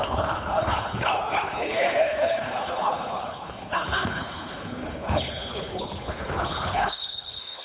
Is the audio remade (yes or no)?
yes